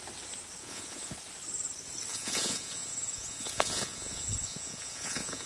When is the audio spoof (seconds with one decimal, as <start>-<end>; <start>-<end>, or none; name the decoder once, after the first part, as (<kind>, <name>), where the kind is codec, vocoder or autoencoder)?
0.6-1.2 (vocoder, Vocos); 2.1-5.5